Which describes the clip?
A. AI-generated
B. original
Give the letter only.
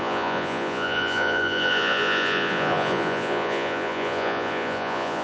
A